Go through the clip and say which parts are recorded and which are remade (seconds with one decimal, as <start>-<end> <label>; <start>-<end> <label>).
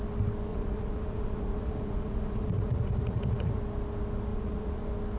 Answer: 0.0-0.5 recorded; 0.5-3.6 remade; 3.6-4.3 recorded; 4.3-4.8 remade; 4.8-5.2 recorded